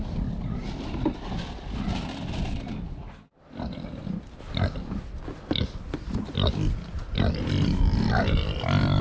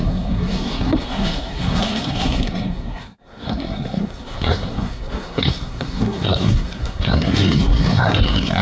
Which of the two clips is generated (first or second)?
second